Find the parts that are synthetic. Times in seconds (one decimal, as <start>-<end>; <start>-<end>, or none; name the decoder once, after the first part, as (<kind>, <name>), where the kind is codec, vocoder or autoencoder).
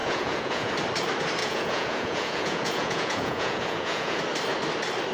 0.0-0.7 (vocoder, Vocos); 1.4-4.2